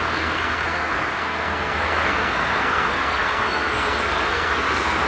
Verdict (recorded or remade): remade